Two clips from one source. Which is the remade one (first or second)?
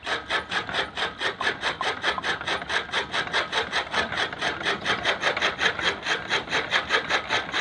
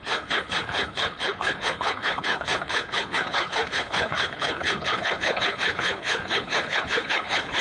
second